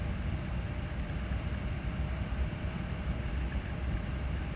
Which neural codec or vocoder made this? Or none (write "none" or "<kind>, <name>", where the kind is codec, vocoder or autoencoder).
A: none